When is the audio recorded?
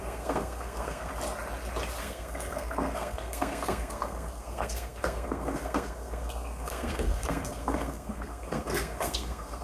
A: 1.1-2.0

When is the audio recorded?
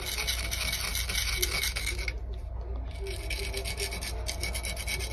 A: 0.0-5.1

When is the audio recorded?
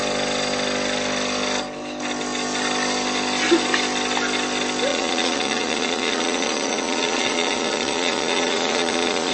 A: 0.0-4.9